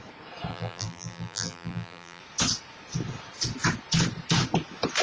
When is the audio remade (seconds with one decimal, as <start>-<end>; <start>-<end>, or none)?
0.5-2.2